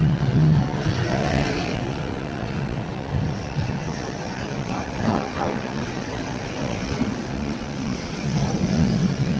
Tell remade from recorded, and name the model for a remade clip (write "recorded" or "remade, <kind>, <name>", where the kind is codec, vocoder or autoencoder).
remade, vocoder, WaveNeXt